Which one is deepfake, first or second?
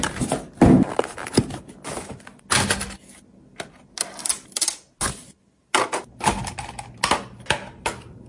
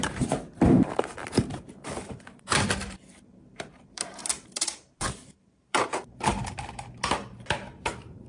second